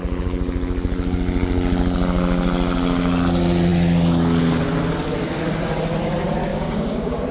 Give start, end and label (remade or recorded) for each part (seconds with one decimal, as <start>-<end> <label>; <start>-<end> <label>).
0.0-6.5 recorded; 6.5-7.3 remade